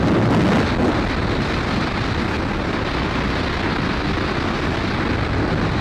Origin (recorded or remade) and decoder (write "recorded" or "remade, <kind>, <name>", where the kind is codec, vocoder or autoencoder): recorded